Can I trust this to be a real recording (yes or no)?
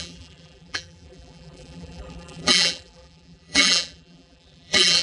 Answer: no